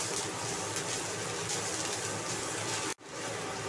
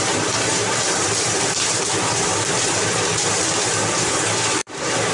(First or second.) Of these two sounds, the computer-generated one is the second